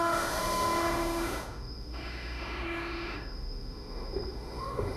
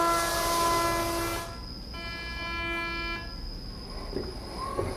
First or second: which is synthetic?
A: first